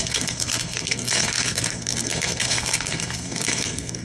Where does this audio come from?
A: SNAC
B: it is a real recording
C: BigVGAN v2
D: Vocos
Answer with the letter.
A